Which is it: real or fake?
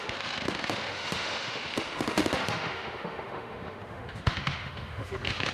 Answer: fake